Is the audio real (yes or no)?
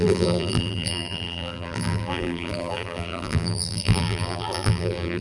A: no